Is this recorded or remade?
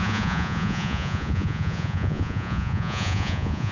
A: remade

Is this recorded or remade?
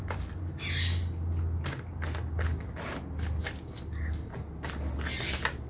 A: recorded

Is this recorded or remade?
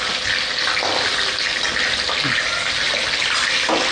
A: recorded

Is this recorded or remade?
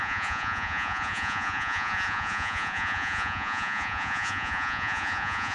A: remade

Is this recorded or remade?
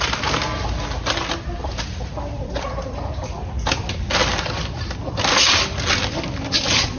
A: recorded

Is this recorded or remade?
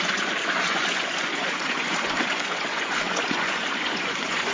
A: remade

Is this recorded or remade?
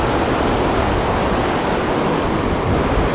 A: recorded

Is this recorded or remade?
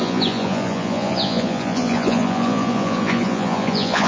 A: remade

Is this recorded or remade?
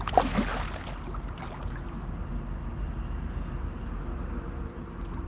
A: recorded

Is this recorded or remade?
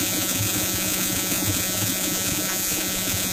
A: remade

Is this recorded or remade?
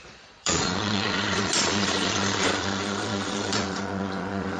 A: remade